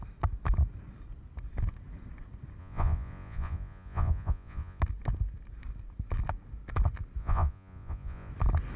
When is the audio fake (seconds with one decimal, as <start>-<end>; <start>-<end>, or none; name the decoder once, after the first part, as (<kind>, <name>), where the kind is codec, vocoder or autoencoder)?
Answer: 2.6-4.8 (vocoder, Vocos); 7.2-8.3